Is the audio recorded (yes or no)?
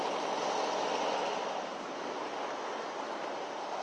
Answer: yes